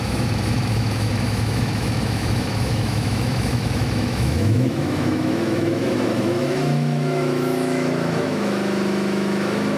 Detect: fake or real fake